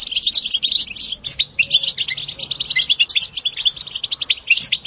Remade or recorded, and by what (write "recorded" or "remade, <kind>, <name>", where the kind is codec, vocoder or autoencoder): recorded